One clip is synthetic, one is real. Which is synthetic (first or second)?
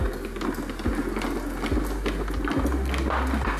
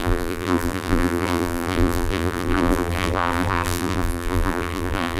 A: second